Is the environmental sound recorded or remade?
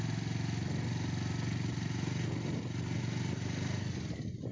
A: recorded